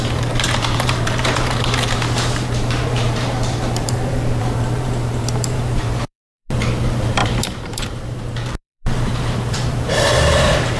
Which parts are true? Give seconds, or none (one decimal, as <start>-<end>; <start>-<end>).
none